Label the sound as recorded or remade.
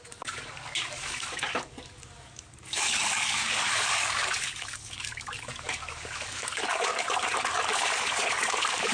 remade